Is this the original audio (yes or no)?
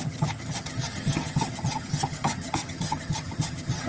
no